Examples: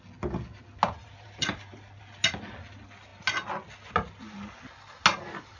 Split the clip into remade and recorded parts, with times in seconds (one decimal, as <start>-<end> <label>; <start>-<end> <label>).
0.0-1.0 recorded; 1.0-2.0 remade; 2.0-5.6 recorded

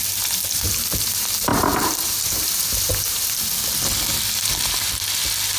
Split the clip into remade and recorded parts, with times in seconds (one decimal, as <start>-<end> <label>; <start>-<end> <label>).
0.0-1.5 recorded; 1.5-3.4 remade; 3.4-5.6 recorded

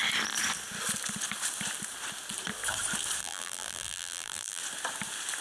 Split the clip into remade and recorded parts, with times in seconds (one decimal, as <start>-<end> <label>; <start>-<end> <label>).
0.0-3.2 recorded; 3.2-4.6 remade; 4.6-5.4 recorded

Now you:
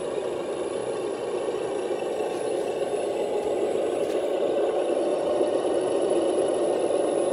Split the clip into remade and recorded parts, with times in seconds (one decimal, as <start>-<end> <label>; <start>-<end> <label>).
0.0-5.1 recorded; 5.1-6.6 remade; 6.6-7.3 recorded

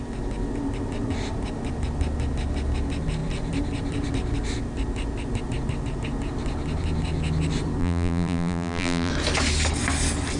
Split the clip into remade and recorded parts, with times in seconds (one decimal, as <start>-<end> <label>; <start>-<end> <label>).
0.0-7.8 recorded; 7.8-9.1 remade; 9.1-10.4 recorded

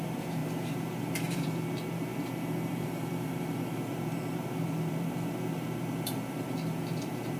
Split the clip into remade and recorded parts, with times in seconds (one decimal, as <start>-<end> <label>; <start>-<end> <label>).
0.0-7.4 remade

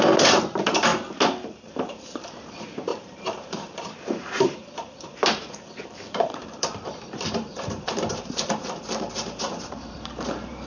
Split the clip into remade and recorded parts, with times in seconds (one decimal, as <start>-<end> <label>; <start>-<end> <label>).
0.0-0.9 remade; 0.9-1.7 recorded; 1.7-10.7 remade

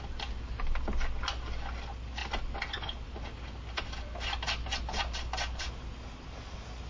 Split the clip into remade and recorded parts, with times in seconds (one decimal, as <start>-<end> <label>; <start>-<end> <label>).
0.0-6.9 recorded